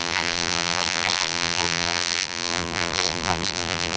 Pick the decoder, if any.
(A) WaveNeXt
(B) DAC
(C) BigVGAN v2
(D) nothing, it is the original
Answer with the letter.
C